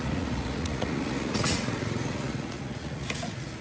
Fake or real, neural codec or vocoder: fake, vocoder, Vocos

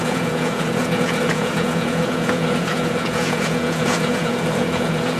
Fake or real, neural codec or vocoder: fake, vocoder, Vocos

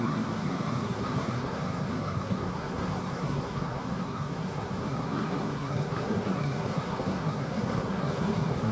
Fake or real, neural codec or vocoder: fake, codec, SNAC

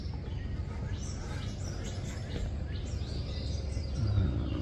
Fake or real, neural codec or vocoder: real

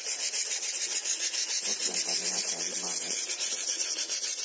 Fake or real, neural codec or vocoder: fake, vocoder, Vocos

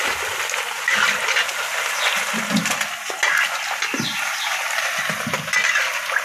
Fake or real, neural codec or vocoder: real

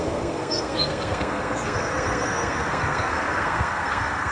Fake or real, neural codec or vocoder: fake, codec, SNAC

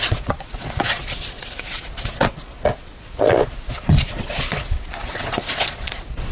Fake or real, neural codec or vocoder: fake, vocoder, Vocos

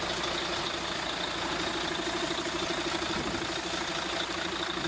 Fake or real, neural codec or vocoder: real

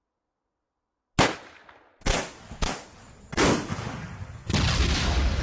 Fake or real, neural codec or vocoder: real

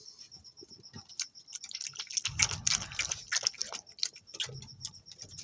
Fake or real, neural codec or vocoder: real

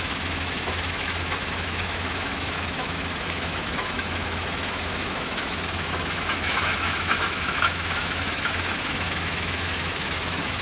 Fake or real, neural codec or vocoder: fake, autoencoder, DAC-VAE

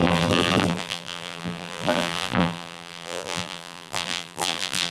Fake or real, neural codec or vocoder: fake, vocoder, BigVGAN v2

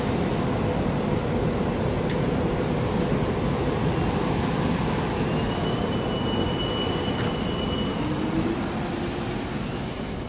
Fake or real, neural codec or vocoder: real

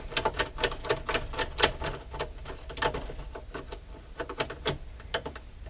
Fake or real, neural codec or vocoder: real